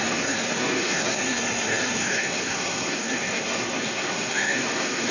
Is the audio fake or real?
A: fake